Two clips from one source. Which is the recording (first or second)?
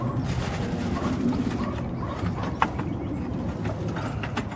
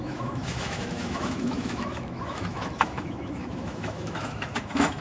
first